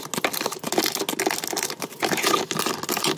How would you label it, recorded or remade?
recorded